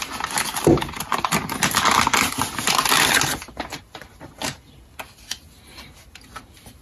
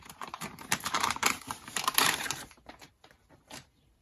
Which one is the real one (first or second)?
first